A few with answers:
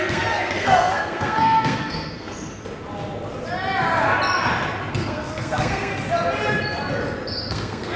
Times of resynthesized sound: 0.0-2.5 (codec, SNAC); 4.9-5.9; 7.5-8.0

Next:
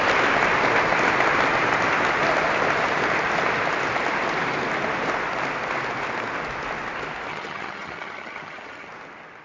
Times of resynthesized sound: 7.3-8.9 (vocoder, HiFi-GAN)

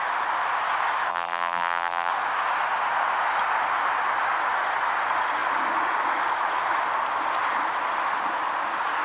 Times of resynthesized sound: 1.1-2.1 (vocoder, BigVGAN v2)

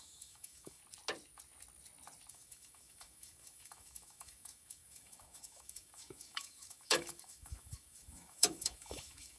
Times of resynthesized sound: 0.0-0.8 (autoencoder, DAC-VAE); 2.3-9.4

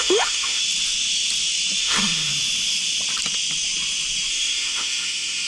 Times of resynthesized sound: 0.0-0.6 (autoencoder, DAC-VAE); 1.8-2.3; 4.3-5.5

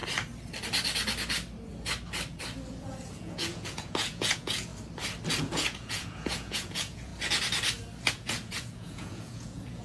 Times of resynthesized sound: 2.8-4.7 (vocoder, Vocos); 5.4-7.1; 8.1-9.8